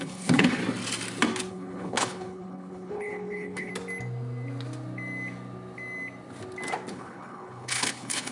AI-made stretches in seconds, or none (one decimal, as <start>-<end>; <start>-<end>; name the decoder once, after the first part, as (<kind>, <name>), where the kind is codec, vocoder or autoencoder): 0.0-0.6 (codec, HILCodec); 1.5-3.7; 6.9-8.3